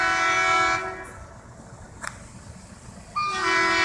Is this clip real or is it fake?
real